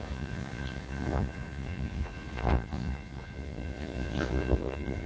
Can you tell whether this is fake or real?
fake